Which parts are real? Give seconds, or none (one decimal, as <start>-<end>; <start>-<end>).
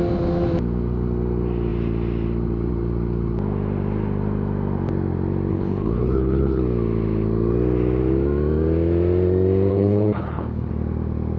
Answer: 0.0-5.5; 6.6-9.7; 10.7-11.4